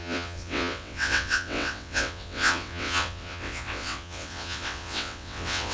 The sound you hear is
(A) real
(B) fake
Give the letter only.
B